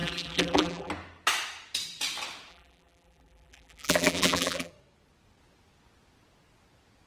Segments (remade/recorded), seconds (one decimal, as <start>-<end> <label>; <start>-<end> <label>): 0.0-0.9 remade; 0.9-2.5 recorded; 2.5-4.7 remade; 4.7-7.1 recorded